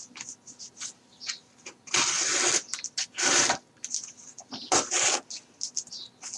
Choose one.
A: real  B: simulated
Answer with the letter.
A